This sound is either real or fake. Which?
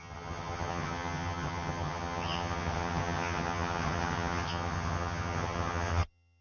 fake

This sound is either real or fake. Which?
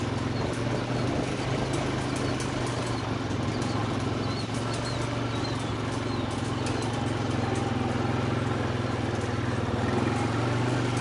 real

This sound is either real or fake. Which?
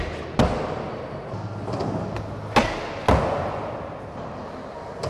real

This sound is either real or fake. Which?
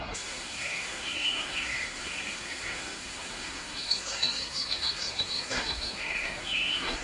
fake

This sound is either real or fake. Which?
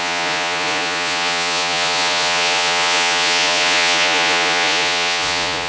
fake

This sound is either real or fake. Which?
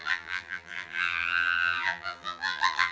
fake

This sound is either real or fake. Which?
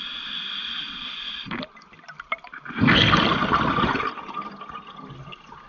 real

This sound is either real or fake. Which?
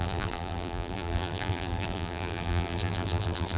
fake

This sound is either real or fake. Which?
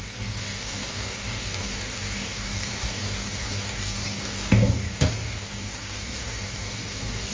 fake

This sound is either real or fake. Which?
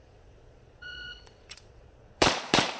fake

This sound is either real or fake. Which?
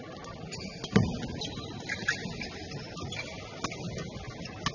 real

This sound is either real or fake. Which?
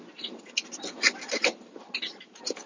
real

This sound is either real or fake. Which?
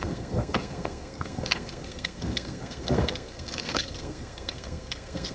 fake